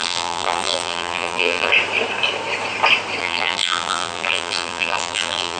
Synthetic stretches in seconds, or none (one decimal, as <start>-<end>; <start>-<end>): 0.0-1.7; 3.2-5.6